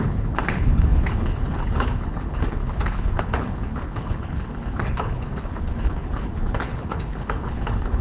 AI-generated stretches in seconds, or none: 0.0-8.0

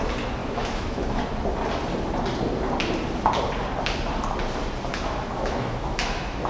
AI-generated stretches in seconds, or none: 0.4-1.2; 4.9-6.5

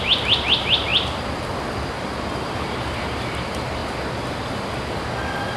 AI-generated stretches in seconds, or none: none

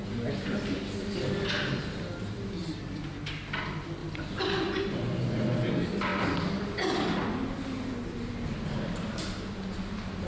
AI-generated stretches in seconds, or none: 4.0-4.8; 6.1-7.2

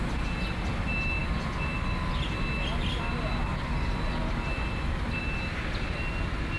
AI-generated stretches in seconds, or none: none